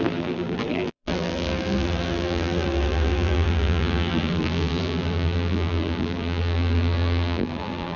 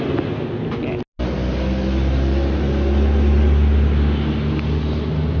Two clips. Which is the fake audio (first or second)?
first